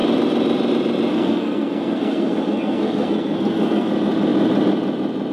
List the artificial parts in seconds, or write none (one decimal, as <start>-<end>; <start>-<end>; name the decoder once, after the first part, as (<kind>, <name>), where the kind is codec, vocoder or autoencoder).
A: 1.1-3.9 (codec, SNAC)